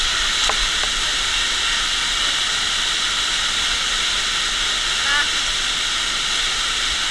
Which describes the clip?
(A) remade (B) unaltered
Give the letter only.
B